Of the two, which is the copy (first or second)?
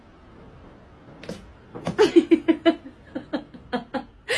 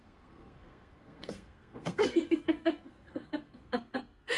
second